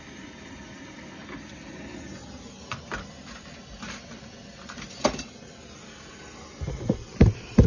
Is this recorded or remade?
recorded